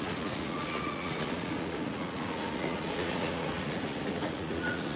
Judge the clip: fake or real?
fake